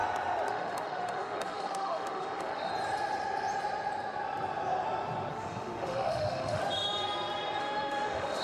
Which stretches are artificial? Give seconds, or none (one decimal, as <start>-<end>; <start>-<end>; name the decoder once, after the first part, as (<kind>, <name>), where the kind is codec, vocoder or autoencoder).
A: 0.5-2.7 (autoencoder, DAC-VAE); 5.3-6.6; 7.6-8.4